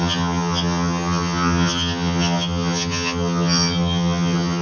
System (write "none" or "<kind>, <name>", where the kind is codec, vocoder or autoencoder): vocoder, HiFi-GAN